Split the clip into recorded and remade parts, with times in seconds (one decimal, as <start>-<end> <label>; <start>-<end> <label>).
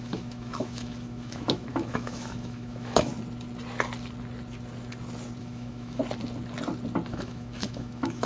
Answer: 0.0-3.1 remade; 3.1-5.4 recorded; 5.4-6.0 remade; 6.0-7.1 recorded; 7.1-8.3 remade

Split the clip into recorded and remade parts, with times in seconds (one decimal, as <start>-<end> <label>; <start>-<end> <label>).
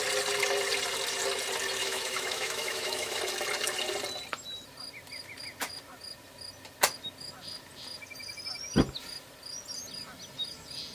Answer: 0.0-1.8 recorded; 1.8-3.2 remade; 3.2-10.9 recorded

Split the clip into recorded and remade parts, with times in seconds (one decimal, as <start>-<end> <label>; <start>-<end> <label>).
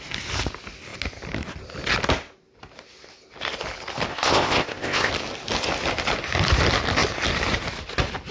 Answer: 0.0-4.1 recorded; 4.1-5.1 remade; 5.1-8.3 recorded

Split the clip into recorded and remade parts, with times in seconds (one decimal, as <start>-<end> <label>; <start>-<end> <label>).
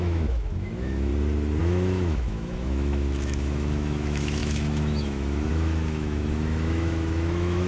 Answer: 0.0-1.1 remade; 1.1-1.6 recorded; 1.6-7.7 remade